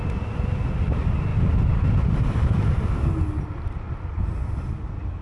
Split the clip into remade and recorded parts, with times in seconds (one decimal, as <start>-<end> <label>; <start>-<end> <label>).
0.0-5.2 recorded